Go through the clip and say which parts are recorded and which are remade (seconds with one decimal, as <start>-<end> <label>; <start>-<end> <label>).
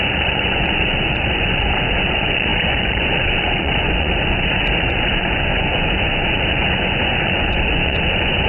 0.0-8.5 remade